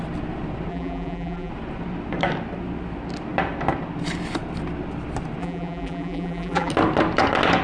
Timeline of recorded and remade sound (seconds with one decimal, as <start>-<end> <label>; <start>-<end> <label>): 0.0-0.7 recorded; 0.7-1.5 remade; 1.5-5.4 recorded; 5.4-6.7 remade; 6.7-7.6 recorded